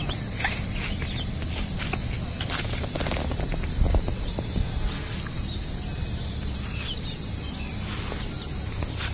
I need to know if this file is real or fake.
real